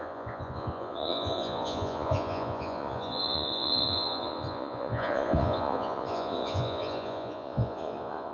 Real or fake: fake